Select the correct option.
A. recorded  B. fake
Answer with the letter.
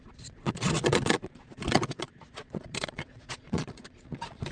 B